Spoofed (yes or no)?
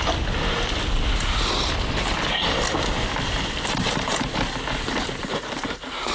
no